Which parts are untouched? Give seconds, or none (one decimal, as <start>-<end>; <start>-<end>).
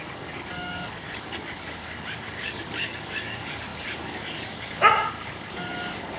none